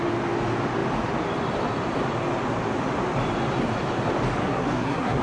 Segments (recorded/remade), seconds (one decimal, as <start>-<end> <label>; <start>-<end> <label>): 0.0-4.4 recorded; 4.4-5.2 remade